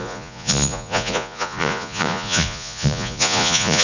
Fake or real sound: fake